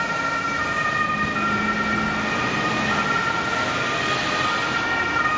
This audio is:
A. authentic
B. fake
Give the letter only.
A